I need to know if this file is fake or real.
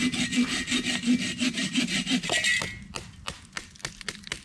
real